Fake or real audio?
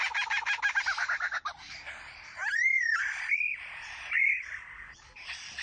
real